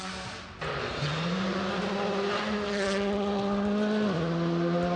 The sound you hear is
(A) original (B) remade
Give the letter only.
A